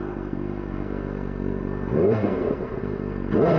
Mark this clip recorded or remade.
remade